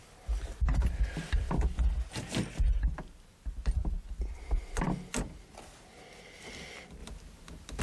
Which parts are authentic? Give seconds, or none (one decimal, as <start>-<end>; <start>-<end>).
0.0-7.8